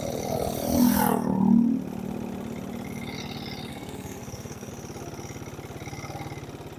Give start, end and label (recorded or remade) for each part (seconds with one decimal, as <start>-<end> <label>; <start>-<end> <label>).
0.0-3.7 recorded; 3.7-4.7 remade; 4.7-6.8 recorded